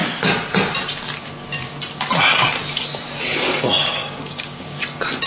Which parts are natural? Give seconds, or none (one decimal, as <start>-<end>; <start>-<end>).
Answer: 0.0-4.0; 4.8-5.3

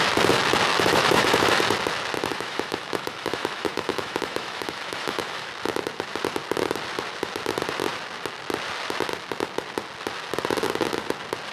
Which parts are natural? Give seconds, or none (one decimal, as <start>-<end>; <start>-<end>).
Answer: 0.0-0.7; 1.6-2.3; 5.5-11.5

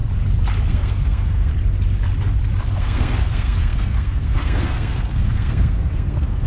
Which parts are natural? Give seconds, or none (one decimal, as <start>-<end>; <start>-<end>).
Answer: 0.0-0.7; 1.5-2.8

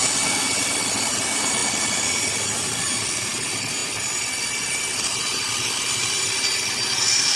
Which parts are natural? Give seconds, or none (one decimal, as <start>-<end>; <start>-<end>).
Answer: 0.0-7.4

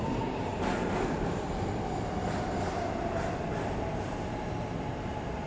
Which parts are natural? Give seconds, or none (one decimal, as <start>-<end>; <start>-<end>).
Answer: 0.0-5.5